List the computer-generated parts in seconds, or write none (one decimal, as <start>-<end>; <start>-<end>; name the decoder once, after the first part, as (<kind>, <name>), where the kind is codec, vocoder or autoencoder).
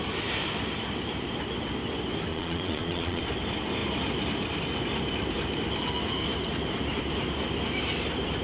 2.3-3.2 (vocoder, Vocos)